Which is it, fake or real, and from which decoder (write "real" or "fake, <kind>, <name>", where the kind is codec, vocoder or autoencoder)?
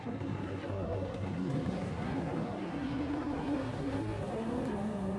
fake, codec, SNAC